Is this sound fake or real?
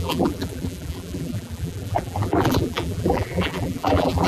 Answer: fake